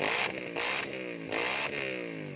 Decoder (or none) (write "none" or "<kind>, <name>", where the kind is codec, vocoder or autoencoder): none